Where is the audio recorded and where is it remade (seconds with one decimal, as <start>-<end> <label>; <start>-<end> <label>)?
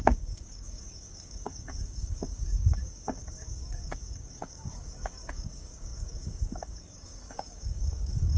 0.0-8.4 remade